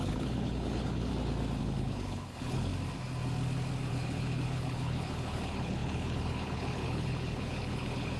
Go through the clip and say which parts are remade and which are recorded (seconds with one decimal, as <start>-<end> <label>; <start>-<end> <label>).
0.0-1.1 remade; 1.1-1.6 recorded; 1.6-2.7 remade; 2.7-3.9 recorded; 3.9-8.2 remade